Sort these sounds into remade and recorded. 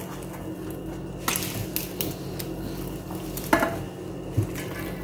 recorded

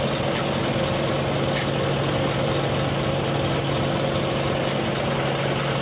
recorded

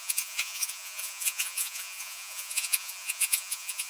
remade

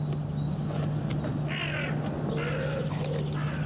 recorded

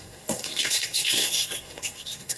remade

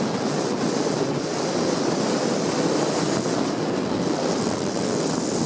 recorded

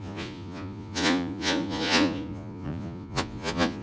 remade